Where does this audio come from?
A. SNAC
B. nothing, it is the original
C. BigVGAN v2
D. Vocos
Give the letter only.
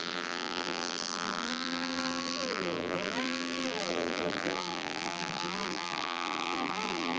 C